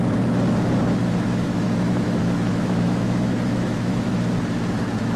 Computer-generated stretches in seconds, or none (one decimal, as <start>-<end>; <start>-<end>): 1.0-4.1